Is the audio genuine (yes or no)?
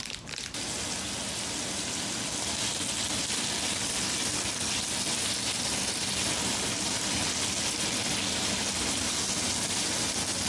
yes